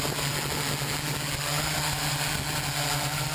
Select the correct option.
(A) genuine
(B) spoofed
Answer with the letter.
A